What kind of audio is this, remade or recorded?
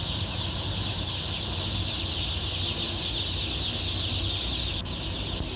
recorded